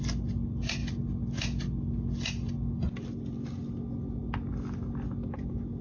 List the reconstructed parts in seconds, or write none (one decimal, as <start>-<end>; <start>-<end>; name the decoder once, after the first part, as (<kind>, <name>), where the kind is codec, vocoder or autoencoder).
none